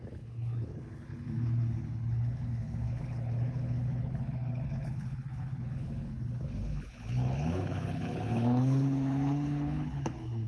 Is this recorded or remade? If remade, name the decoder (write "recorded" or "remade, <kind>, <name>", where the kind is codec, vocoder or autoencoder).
remade, codec, HILCodec